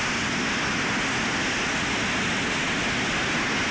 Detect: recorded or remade recorded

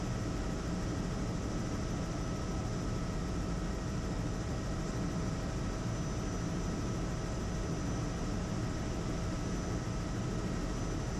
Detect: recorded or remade recorded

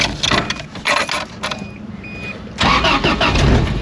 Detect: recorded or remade recorded